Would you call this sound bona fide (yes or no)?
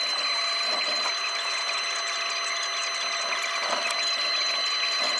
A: yes